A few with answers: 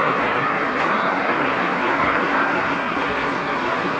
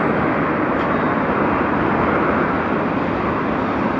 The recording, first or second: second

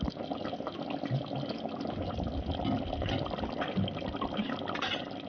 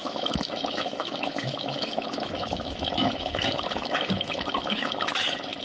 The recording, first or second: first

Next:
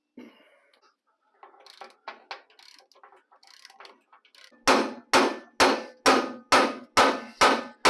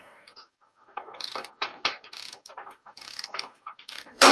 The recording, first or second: first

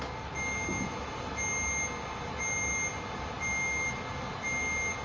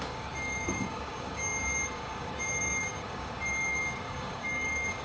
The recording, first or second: first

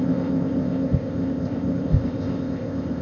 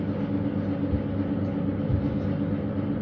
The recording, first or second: second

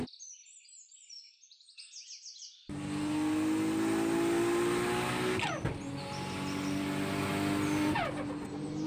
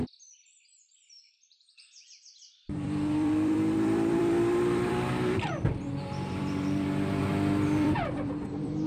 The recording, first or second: first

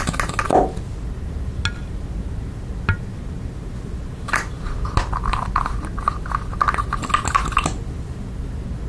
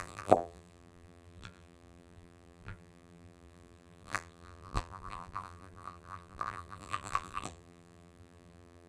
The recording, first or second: first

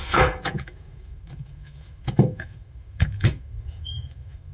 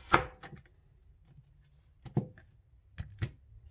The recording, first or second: second